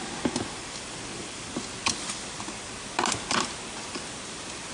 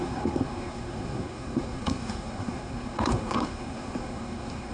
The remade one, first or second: second